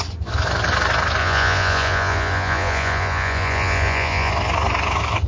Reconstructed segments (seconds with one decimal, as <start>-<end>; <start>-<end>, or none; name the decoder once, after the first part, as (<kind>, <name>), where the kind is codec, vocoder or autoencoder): 1.2-4.3 (vocoder, Vocos)